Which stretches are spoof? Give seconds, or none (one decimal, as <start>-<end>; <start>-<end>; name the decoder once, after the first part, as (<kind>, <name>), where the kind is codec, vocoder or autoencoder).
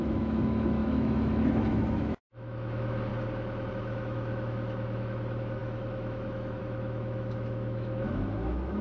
0.0-3.1 (autoencoder, DAC-VAE); 3.7-8.8